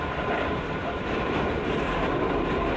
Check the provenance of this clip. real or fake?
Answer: real